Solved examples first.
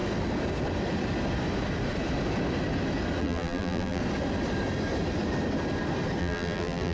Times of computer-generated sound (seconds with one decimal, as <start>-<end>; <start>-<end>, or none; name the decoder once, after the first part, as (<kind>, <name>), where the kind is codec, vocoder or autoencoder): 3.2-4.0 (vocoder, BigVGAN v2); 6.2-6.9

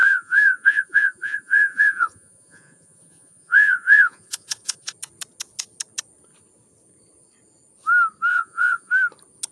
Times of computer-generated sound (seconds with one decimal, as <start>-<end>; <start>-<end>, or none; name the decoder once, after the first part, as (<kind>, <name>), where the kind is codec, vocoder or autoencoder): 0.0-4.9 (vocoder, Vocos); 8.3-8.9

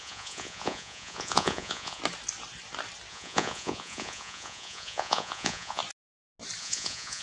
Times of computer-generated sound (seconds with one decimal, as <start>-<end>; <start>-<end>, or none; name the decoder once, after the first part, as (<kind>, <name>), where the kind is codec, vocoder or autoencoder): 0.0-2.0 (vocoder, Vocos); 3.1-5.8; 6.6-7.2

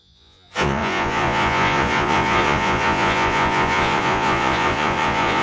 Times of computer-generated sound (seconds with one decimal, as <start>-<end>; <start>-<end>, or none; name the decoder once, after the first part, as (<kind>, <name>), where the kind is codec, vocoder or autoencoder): 0.0-5.4 (vocoder, Vocos)

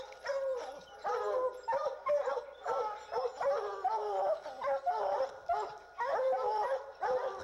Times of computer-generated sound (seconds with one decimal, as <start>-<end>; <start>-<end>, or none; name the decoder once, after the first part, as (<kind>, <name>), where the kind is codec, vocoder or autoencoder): 0.0-0.5 (vocoder, BigVGAN v2); 1.2-1.8; 2.4-3.3; 5.7-7.4

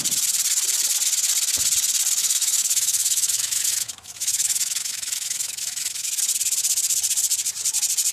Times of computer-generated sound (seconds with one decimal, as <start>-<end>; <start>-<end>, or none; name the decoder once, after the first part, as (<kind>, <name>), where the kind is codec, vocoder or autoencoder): 2.2-6.1 (autoencoder, DAC-VAE)

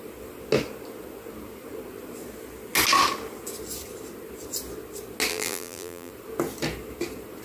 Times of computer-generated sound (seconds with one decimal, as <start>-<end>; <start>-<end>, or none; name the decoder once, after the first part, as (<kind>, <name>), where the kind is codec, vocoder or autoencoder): 5.3-6.1 (vocoder, BigVGAN v2)

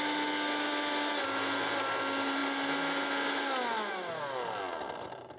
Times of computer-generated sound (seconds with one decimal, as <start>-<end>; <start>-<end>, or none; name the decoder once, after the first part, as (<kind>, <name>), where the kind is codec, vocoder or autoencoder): none